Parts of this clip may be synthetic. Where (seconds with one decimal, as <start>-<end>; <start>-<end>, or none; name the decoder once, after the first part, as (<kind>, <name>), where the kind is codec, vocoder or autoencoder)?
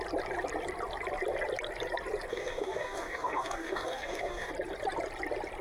2.3-4.5 (codec, DAC)